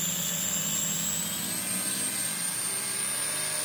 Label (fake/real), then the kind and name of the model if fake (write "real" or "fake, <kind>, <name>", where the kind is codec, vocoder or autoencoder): real